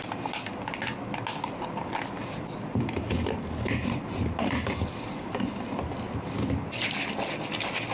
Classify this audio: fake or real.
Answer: real